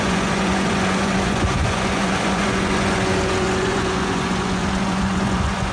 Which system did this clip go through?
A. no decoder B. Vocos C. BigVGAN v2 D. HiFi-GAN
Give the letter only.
B